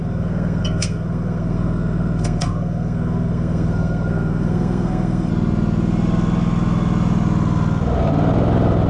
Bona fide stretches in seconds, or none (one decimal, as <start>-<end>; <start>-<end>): 5.3-8.9